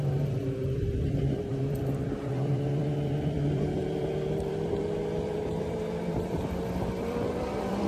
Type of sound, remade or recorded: remade